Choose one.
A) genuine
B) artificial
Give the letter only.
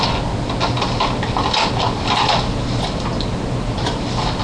A